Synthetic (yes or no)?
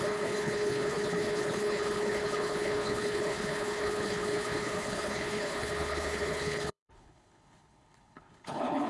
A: yes